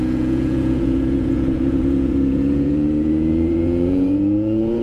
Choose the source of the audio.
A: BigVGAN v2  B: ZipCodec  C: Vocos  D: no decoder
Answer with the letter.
C